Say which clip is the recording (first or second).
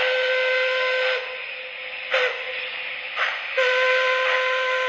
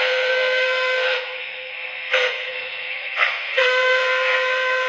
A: first